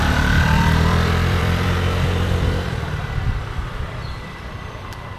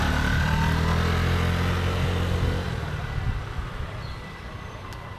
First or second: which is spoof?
first